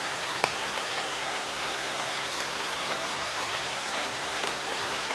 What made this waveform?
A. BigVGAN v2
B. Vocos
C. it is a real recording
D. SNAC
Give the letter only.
D